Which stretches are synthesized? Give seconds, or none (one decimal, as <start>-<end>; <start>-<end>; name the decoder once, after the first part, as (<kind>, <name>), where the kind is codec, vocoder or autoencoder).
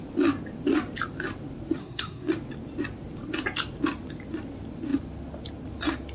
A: 1.8-2.3 (codec, SNAC)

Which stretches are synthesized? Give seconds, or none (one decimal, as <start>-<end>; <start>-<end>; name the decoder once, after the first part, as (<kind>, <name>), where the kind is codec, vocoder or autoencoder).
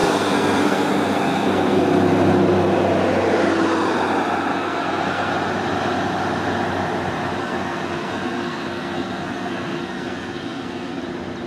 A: 0.0-1.8 (codec, SNAC); 4.5-5.3; 7.4-11.0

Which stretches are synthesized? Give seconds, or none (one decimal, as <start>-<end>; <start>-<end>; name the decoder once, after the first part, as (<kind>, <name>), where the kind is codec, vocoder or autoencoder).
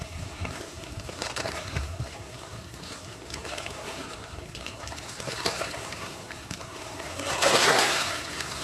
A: 0.0-8.6 (codec, SNAC)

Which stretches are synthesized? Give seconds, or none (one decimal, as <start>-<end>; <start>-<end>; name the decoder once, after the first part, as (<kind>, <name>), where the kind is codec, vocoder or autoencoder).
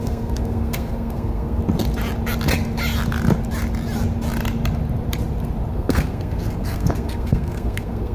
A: 0.0-1.6 (codec, SNAC); 5.7-8.1